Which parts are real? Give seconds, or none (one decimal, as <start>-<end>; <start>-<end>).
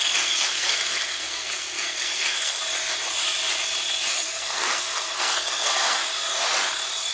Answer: 2.6-4.1; 6.0-7.1